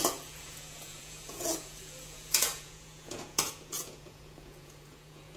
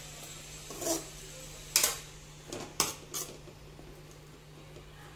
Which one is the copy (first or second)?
first